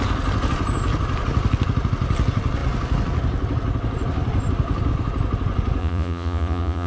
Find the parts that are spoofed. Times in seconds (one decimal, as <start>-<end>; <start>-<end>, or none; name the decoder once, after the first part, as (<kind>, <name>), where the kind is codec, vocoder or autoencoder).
5.8-6.9 (vocoder, Vocos)